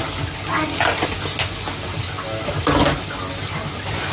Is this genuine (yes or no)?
yes